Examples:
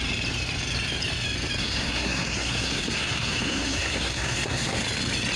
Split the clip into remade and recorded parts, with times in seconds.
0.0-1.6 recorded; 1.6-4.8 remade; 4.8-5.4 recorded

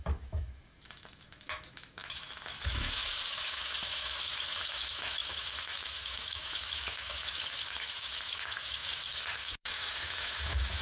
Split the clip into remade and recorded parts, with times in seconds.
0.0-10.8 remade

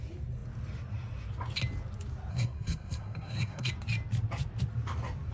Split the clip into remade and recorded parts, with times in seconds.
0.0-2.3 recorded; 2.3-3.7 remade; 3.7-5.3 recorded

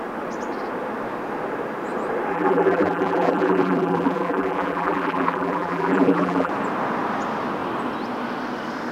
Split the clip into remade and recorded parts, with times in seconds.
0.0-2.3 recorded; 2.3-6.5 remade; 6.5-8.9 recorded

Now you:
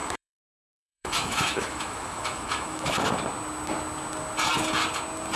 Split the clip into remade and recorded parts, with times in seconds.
0.0-3.1 remade; 3.1-5.4 recorded